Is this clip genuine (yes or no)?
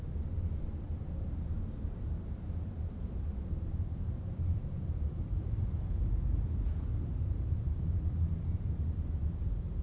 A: no